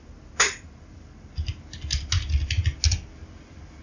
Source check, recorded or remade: recorded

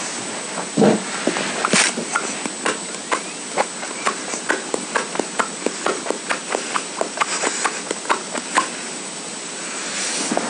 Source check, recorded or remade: recorded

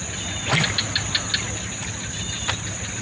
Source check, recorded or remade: recorded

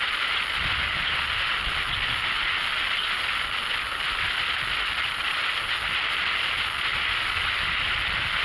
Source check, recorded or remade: recorded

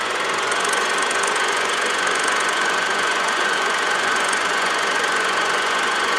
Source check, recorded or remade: remade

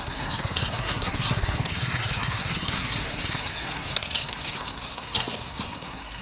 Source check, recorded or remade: remade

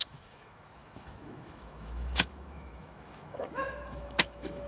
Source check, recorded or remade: remade